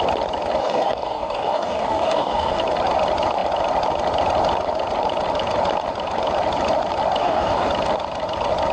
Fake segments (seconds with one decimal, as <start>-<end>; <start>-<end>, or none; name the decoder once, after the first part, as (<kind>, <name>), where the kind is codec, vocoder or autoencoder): 0.6-2.6 (codec, DAC); 7.2-7.7